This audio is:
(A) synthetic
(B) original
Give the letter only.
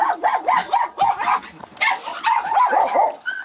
B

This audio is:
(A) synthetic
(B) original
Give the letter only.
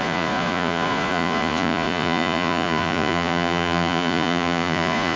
A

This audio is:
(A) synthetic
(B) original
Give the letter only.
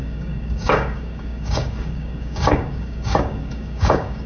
A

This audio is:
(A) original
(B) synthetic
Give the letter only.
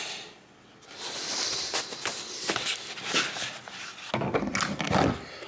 A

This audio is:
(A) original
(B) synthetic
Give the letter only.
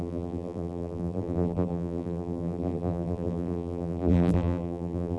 B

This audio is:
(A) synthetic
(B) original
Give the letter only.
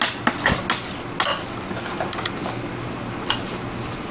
B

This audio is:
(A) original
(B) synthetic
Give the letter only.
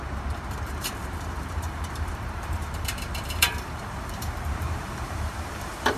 B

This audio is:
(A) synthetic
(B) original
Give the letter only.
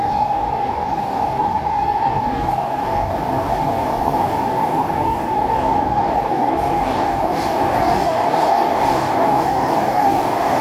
A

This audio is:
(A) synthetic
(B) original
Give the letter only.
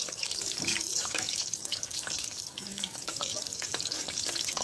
A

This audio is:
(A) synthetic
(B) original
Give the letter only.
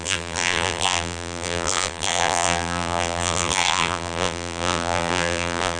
A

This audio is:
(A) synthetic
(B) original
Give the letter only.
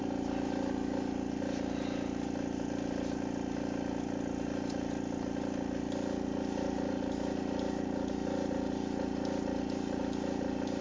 B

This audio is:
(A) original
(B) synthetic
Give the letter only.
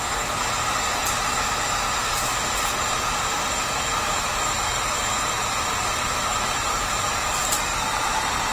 B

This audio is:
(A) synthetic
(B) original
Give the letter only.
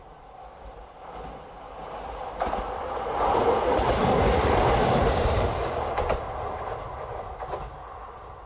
B